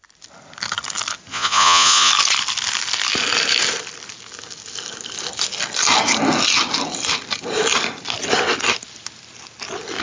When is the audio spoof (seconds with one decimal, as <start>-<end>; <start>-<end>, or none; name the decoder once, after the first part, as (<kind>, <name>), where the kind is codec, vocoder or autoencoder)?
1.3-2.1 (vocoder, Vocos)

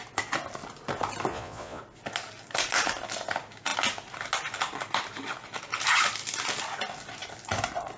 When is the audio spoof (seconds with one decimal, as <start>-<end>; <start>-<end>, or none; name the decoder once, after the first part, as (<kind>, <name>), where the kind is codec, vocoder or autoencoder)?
1.3-1.8 (vocoder, Vocos)

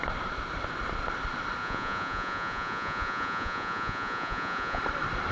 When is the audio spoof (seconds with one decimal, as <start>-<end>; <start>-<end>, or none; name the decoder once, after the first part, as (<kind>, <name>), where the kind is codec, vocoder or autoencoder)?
1.6-4.8 (vocoder, Vocos)